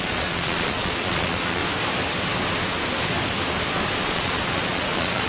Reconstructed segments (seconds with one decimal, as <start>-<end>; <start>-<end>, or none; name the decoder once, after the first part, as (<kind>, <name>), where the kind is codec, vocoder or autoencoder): 0.0-1.6 (vocoder, Vocos); 4.0-5.3